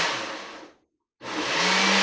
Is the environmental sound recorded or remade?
recorded